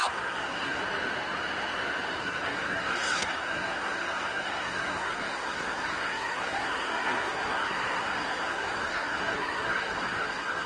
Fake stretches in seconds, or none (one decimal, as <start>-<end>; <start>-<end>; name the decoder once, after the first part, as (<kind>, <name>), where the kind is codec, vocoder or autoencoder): 0.0-0.8 (codec, SNAC); 2.2-10.7